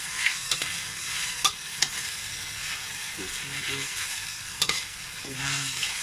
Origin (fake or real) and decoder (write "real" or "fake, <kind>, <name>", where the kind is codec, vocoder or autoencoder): fake, codec, SNAC